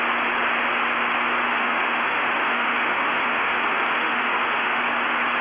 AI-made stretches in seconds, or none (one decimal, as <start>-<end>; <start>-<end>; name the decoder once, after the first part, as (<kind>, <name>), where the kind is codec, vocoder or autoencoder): 1.6-4.8 (autoencoder, DAC-VAE)